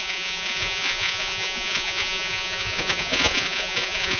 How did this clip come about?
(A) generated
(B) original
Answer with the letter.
A